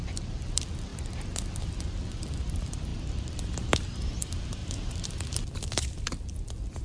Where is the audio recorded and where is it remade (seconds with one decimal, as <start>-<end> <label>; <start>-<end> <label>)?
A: 0.0-4.6 remade; 4.6-5.5 recorded; 5.5-6.8 remade